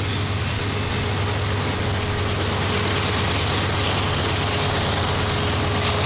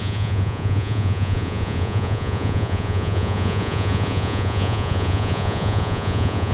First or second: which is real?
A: first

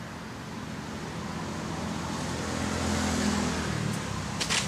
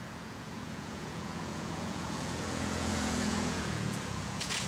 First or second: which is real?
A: first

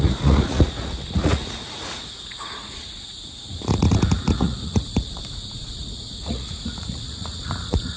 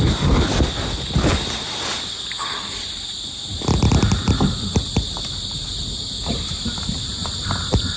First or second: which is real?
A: second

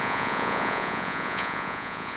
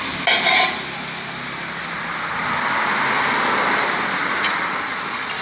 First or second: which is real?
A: second